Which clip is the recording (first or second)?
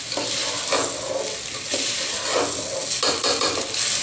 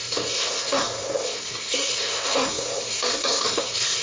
first